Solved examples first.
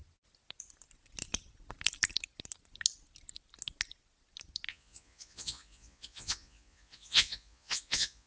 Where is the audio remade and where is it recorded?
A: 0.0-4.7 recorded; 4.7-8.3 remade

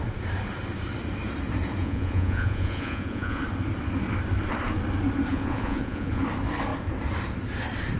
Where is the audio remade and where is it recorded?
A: 0.0-1.8 recorded; 1.8-3.4 remade; 3.4-5.3 recorded; 5.3-6.2 remade; 6.2-8.0 recorded

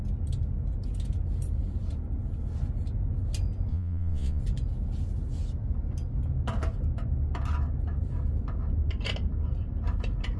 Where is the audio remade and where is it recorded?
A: 0.0-3.7 recorded; 3.7-4.4 remade; 4.4-10.4 recorded